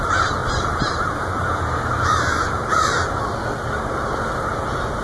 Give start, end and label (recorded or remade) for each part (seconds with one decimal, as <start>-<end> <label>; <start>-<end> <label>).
0.0-0.4 recorded; 0.4-3.4 remade; 3.4-5.0 recorded